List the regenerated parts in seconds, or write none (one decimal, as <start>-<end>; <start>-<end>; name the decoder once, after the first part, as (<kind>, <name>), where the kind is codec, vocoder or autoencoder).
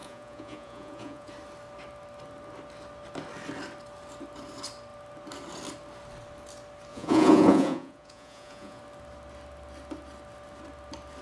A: 0.0-1.3 (vocoder, Vocos); 6.9-8.8